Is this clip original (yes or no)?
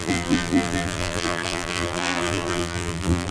no